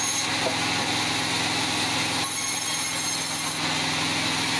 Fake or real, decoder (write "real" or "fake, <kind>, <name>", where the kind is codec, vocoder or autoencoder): real